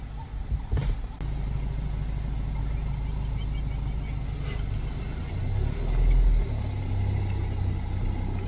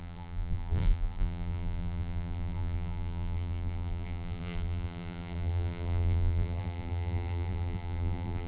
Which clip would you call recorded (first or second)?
first